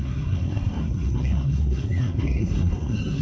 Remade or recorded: remade